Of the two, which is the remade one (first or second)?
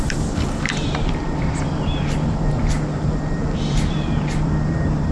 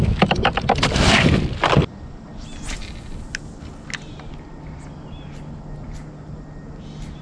first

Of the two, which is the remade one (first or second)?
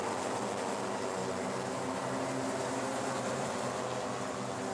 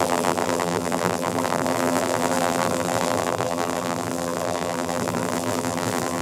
second